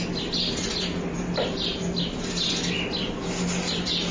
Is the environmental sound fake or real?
real